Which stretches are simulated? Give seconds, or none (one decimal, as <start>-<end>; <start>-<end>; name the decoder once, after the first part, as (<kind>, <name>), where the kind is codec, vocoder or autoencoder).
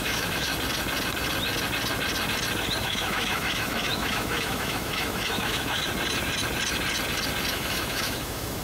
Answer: 0.0-0.5 (autoencoder, DAC-VAE); 2.8-5.8; 7.5-8.6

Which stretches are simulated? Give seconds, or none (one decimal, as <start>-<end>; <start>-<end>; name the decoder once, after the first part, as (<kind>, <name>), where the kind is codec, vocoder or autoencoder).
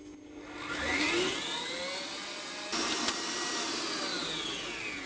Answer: none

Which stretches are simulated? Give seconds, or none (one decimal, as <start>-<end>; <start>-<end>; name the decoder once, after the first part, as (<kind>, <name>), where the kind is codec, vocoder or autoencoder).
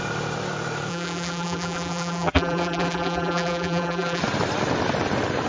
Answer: 0.9-4.2 (vocoder, BigVGAN v2)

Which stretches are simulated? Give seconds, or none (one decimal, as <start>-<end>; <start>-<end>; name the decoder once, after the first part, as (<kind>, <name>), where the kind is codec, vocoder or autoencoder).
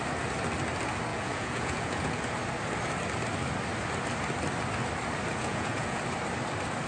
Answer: 1.1-2.2 (vocoder, Vocos); 5.3-6.0